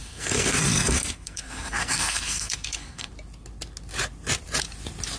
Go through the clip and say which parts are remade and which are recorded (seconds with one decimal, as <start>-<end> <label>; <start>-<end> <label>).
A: 0.0-3.1 remade; 3.1-5.2 recorded